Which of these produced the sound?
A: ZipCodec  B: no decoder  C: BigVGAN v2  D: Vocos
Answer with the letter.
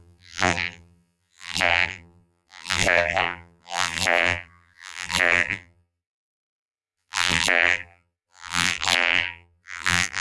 C